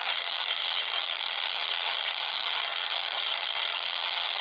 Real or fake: fake